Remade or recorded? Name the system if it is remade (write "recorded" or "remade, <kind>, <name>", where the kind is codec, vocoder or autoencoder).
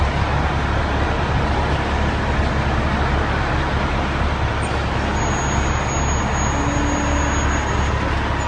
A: recorded